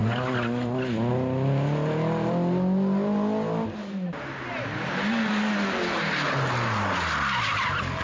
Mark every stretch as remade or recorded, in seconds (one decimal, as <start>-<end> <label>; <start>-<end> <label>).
0.0-3.8 recorded; 3.8-6.3 remade; 6.3-8.0 recorded